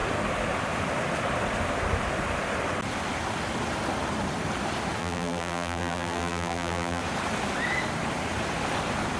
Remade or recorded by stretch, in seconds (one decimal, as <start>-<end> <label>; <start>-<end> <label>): 0.0-5.0 recorded; 5.0-7.0 remade; 7.0-9.2 recorded